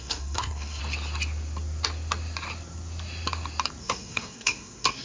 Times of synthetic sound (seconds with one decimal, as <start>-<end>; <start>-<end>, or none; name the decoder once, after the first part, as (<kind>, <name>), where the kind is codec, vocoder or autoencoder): 0.0-0.8 (codec, SNAC); 3.8-5.0